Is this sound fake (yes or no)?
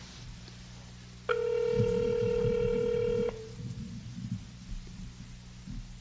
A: no